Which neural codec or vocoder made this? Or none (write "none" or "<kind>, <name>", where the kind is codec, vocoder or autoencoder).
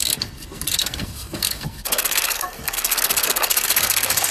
codec, SNAC